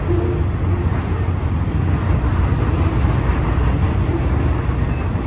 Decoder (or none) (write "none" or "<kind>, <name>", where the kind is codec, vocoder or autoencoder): none